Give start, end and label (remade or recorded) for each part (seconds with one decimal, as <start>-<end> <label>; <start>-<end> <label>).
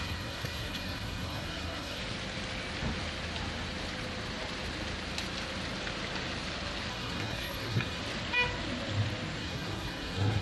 0.0-2.0 remade; 2.0-6.9 recorded; 6.9-8.0 remade; 8.0-9.4 recorded; 9.4-10.4 remade